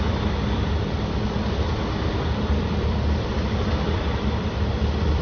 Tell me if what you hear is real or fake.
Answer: fake